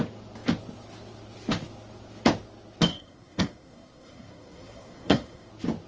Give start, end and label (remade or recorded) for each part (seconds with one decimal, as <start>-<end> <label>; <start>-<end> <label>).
0.0-2.9 recorded; 2.9-5.5 remade; 5.5-5.9 recorded